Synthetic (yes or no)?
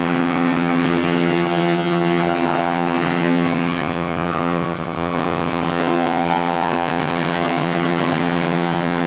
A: yes